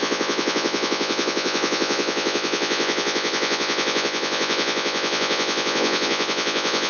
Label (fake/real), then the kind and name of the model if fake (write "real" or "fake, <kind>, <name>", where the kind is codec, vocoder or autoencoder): fake, vocoder, Vocos